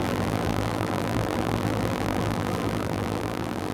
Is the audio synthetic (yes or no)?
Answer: yes